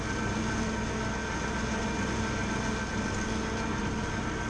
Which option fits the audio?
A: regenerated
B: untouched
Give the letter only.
B